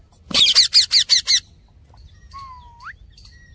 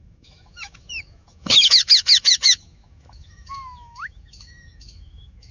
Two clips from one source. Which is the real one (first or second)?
first